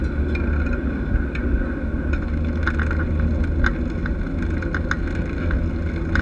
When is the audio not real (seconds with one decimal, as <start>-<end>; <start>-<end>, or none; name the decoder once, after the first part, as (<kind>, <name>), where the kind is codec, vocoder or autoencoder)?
none